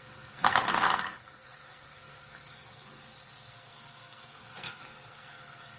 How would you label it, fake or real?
fake